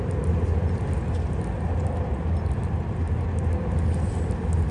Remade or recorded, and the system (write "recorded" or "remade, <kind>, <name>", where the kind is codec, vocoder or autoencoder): recorded